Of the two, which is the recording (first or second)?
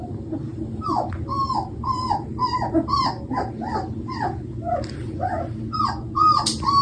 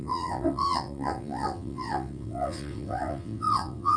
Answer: first